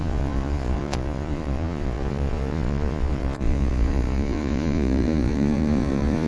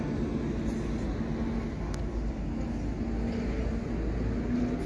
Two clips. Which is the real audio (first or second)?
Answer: second